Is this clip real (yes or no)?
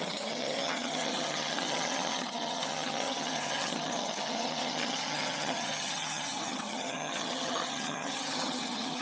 no